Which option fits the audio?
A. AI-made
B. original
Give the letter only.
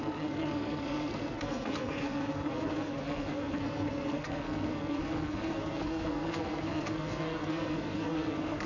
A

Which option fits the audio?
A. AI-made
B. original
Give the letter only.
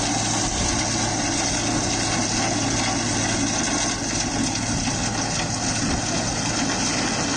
B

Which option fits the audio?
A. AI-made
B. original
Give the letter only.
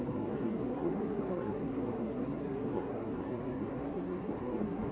A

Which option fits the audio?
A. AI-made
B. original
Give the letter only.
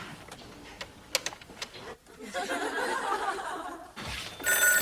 B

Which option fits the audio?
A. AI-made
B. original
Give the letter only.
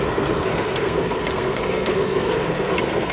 A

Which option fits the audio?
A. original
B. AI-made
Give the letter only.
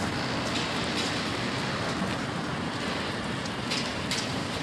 A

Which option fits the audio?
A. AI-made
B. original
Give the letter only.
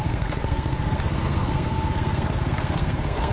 A